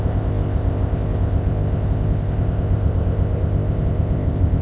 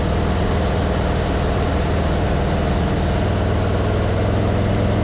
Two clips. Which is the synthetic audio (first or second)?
first